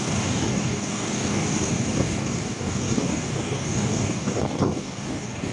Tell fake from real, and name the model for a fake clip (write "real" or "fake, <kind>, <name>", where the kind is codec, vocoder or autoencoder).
fake, codec, DAC